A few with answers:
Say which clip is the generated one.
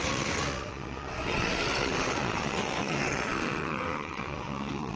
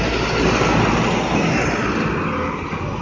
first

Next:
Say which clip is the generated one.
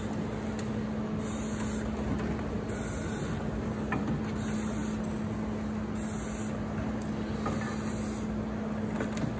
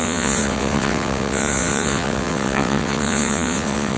second